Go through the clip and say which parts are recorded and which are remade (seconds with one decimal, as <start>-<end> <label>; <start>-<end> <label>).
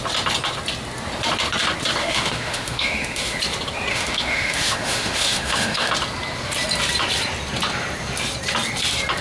0.0-2.0 recorded; 2.0-3.4 remade; 3.4-3.9 recorded; 3.9-5.9 remade; 5.9-9.2 recorded